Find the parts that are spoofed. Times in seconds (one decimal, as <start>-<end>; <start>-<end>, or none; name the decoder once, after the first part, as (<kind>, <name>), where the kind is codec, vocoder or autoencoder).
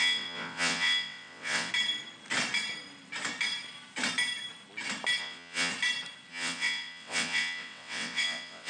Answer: 0.0-1.7 (vocoder, WaveNeXt); 5.2-5.7; 6.3-8.7